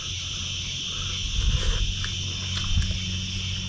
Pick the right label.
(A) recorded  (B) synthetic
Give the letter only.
A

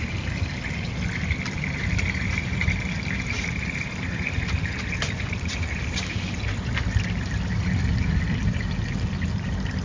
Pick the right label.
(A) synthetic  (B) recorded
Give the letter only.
B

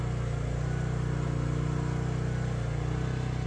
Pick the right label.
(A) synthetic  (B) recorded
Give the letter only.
B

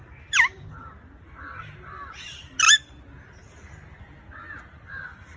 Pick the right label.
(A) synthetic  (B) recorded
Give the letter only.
B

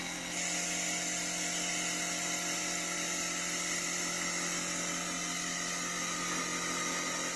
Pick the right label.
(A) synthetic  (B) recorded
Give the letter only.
B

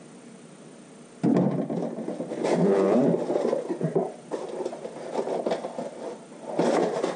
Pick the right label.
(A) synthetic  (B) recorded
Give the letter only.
B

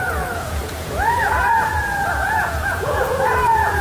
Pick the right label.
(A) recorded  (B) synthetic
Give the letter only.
B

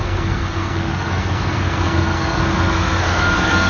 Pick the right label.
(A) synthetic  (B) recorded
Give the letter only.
A